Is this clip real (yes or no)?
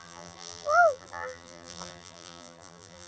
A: no